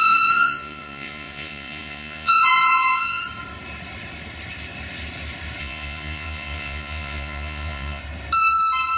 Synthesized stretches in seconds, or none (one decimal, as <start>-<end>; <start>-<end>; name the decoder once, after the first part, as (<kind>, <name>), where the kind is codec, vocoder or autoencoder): 0.0-3.2 (vocoder, Vocos); 5.6-8.0